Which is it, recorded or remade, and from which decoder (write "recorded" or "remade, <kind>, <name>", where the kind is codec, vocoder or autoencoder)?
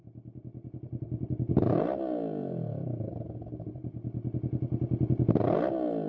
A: recorded